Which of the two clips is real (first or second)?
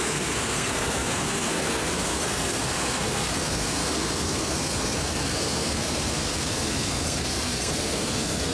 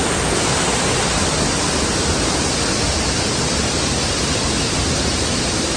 second